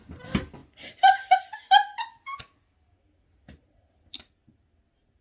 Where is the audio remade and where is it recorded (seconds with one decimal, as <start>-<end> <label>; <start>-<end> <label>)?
0.0-5.2 recorded